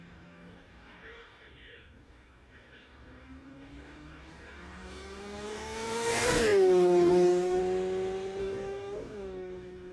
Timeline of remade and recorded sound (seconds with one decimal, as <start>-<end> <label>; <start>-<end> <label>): 0.0-7.6 remade; 7.6-8.4 recorded; 8.4-9.9 remade